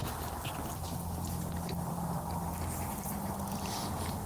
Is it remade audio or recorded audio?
recorded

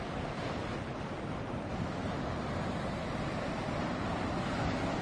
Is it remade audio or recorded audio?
recorded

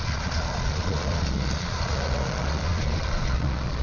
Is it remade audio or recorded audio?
remade